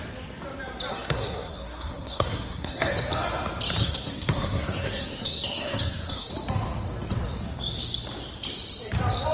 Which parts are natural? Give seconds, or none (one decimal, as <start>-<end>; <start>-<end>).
0.0-0.9; 2.9-3.8; 6.3-9.3